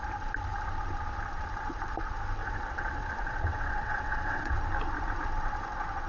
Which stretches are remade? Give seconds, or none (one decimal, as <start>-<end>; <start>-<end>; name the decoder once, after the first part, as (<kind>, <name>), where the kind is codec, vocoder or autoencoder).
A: 2.4-4.5 (vocoder, WaveNeXt)